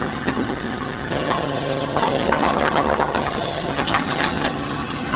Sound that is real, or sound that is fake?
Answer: fake